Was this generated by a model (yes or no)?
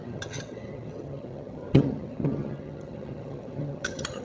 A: yes